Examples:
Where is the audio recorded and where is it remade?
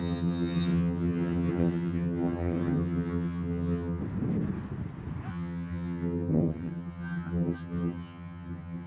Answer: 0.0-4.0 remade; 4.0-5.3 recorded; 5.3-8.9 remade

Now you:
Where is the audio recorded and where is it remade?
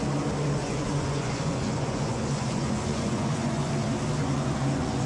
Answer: 0.0-0.6 recorded; 0.6-3.7 remade; 3.7-4.2 recorded; 4.2-5.1 remade